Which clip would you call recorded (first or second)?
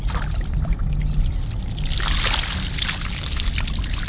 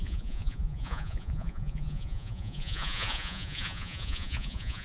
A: first